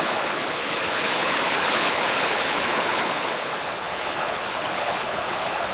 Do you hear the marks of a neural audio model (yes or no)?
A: yes